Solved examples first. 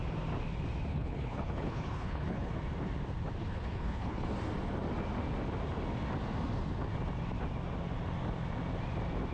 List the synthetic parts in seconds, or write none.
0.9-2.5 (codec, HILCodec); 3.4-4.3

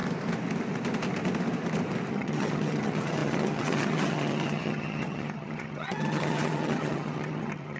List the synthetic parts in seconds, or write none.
2.1-7.8 (vocoder, HiFi-GAN)

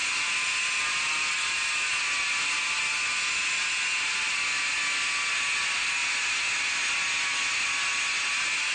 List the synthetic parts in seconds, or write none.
none

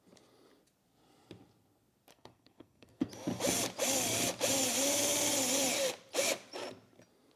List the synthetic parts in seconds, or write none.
2.1-3.1 (codec, SNAC)

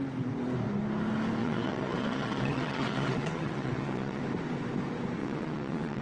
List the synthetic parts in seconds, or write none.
1.4-4.2 (vocoder, WaveNeXt); 5.2-6.0

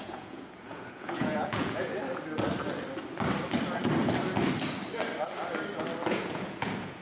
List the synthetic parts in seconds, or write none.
0.0-1.9 (vocoder, Vocos); 6.1-7.0

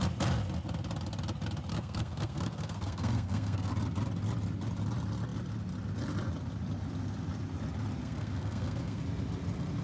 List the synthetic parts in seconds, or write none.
1.7-3.7 (codec, SNAC); 8.0-9.0